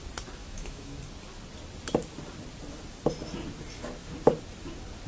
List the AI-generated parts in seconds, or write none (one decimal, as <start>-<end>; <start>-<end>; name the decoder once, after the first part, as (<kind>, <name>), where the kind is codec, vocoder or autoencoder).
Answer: 0.4-1.0 (autoencoder, DAC-VAE)